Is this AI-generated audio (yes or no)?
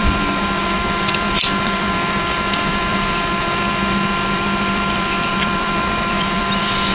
yes